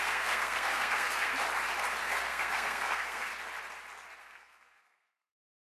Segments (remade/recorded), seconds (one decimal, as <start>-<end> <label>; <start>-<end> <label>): 0.0-1.3 remade; 1.3-2.0 recorded; 2.0-3.3 remade; 3.3-4.2 recorded; 4.2-5.6 remade